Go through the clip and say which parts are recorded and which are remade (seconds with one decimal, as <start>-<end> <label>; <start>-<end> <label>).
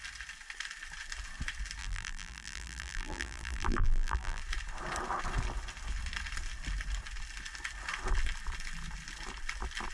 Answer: 0.0-1.8 recorded; 1.8-4.4 remade; 4.4-9.9 recorded